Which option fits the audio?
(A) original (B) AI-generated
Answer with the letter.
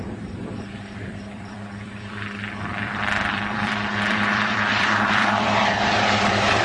B